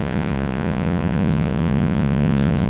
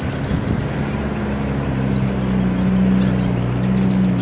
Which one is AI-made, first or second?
first